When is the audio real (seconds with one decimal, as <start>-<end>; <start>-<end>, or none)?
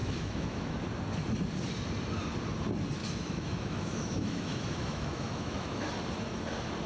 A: 0.8-3.0; 5.9-6.9